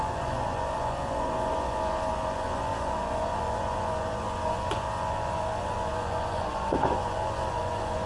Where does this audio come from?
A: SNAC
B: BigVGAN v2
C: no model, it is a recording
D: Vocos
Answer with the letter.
D